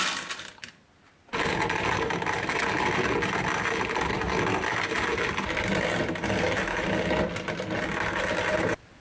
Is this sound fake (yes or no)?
no